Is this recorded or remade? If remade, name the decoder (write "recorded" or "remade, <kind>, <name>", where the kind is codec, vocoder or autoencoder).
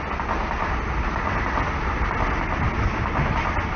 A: recorded